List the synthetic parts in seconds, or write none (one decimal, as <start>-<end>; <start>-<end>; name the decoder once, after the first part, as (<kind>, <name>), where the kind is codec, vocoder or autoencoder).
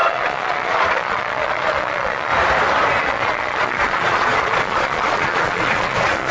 0.0-2.3 (vocoder, Vocos); 3.0-6.3